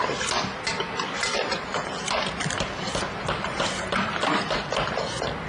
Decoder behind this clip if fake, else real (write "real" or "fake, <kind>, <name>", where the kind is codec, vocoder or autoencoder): real